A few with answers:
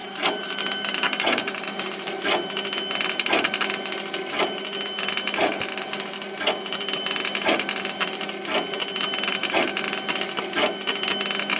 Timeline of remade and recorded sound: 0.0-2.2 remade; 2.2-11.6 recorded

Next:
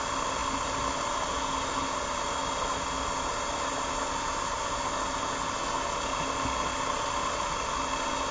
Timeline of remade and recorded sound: 0.0-8.3 recorded

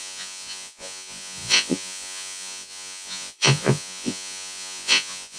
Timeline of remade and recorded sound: 0.0-5.4 remade

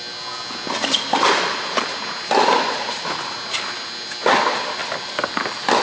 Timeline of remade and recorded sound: 0.0-4.8 recorded; 4.8-5.8 remade

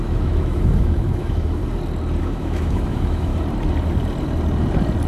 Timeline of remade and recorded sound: 0.0-1.6 remade; 1.6-2.2 recorded; 2.2-3.3 remade; 3.3-5.1 recorded

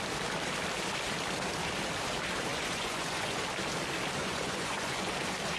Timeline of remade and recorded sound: 0.0-2.5 recorded; 2.5-3.4 remade; 3.4-4.2 recorded; 4.2-5.1 remade; 5.1-5.6 recorded

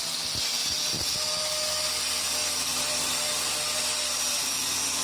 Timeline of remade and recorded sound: 0.0-0.6 recorded; 0.6-1.1 remade; 1.1-2.4 recorded; 2.4-3.4 remade; 3.4-3.9 recorded; 3.9-4.4 remade; 4.4-5.0 recorded